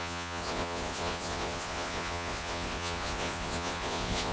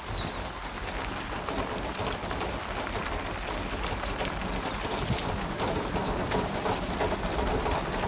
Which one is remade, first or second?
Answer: first